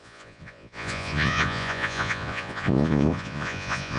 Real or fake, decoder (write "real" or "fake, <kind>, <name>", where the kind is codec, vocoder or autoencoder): fake, vocoder, Vocos